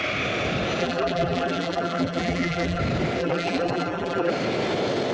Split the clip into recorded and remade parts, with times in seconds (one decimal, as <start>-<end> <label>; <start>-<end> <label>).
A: 0.0-0.8 recorded; 0.8-2.8 remade; 2.8-3.2 recorded; 3.2-4.3 remade; 4.3-5.1 recorded